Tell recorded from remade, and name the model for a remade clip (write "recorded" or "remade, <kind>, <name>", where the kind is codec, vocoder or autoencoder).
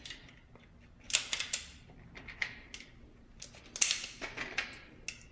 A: recorded